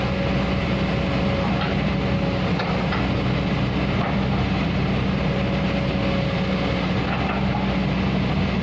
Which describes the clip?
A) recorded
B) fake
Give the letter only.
A